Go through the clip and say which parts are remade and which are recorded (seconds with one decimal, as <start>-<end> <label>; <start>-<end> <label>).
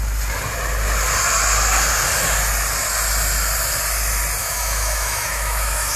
0.0-4.4 recorded; 4.4-6.0 remade